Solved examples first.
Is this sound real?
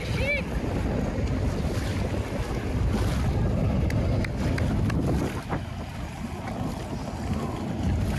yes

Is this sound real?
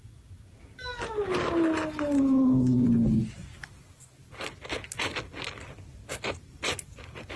yes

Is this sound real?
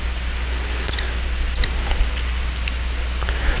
yes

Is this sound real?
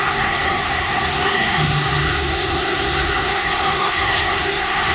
no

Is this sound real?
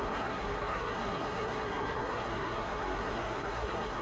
no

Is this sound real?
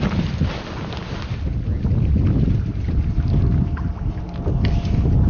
yes